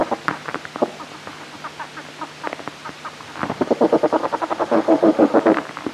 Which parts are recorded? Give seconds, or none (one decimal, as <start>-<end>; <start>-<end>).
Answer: 0.0-3.5; 5.3-5.9